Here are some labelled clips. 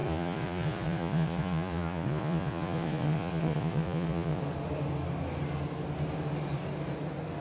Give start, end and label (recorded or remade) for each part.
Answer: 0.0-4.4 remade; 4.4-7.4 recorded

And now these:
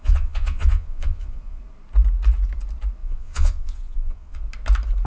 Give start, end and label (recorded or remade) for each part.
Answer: 0.0-1.6 remade; 1.6-3.0 recorded; 3.0-4.4 remade; 4.4-5.1 recorded

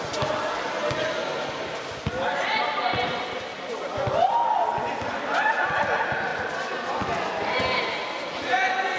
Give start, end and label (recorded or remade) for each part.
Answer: 0.0-9.0 recorded

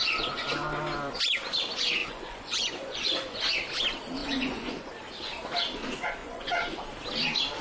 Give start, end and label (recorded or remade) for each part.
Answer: 0.0-2.0 recorded; 2.0-3.4 remade; 3.4-4.2 recorded; 4.2-4.9 remade; 4.9-6.2 recorded; 6.2-6.8 remade; 6.8-7.6 recorded

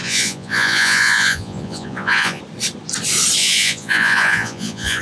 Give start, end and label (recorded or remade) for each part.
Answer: 0.0-2.4 remade; 2.4-3.4 recorded; 3.4-5.0 remade

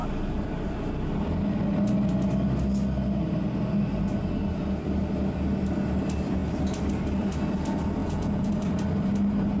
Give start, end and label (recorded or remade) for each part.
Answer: 0.0-8.0 recorded; 8.0-8.5 remade; 8.5-9.6 recorded

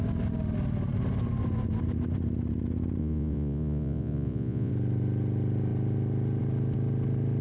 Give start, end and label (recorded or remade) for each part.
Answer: 0.0-3.0 recorded; 3.0-4.7 remade; 4.7-7.4 recorded